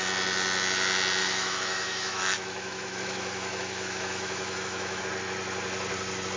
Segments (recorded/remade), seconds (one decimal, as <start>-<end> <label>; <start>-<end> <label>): 0.0-1.2 recorded; 1.2-5.0 remade; 5.0-6.4 recorded